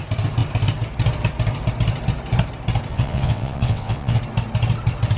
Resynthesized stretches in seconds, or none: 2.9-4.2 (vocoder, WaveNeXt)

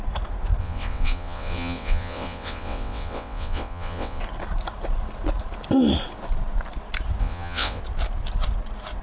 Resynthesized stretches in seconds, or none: 0.6-4.2 (vocoder, WaveNeXt); 7.2-7.8

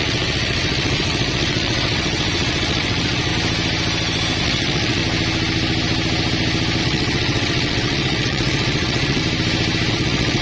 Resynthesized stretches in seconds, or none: 0.0-3.3 (vocoder, WaveNeXt); 4.4-5.0; 6.8-9.2; 9.9-10.4

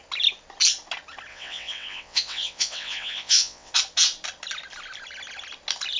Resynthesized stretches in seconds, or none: 1.3-3.7 (vocoder, WaveNeXt)

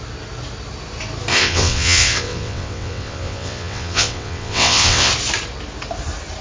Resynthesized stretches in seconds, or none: 1.3-5.1 (vocoder, WaveNeXt)